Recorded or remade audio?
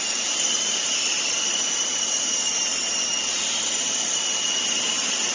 recorded